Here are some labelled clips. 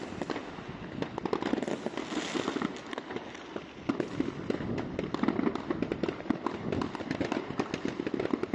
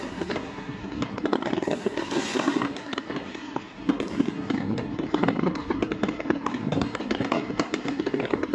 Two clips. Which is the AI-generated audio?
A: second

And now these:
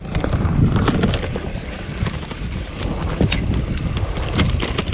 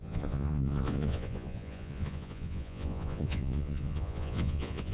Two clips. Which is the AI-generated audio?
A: second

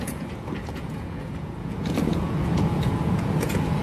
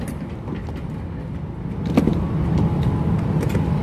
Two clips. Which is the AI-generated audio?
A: first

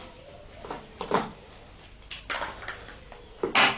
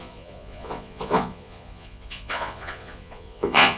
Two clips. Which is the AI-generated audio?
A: second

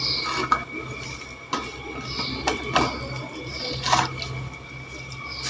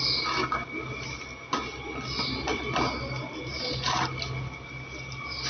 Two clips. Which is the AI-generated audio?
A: first